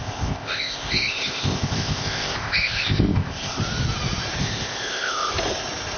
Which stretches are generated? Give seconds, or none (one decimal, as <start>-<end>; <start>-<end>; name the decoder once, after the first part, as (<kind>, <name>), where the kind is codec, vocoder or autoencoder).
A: 0.0-3.6 (codec, ZipCodec); 4.4-5.3

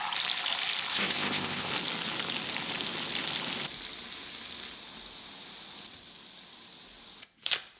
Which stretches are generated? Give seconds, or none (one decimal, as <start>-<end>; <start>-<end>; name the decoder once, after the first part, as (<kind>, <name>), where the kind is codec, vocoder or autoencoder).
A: 0.9-1.7 (codec, ZipCodec)

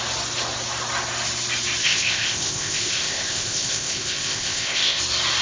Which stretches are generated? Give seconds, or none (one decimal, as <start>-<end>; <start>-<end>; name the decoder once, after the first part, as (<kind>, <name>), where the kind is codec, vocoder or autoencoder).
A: 1.8-5.0 (codec, ZipCodec)